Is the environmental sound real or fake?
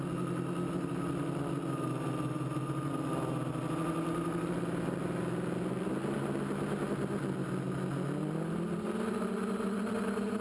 real